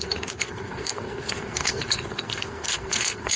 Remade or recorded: remade